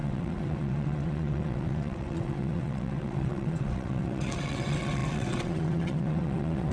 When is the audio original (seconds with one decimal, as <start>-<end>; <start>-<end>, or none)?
none